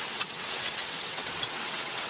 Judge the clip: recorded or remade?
remade